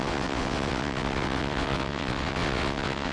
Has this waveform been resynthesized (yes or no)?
yes